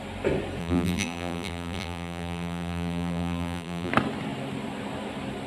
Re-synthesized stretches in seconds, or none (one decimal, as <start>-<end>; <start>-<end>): 0.6-3.9